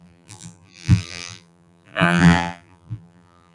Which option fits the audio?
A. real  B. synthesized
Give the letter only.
B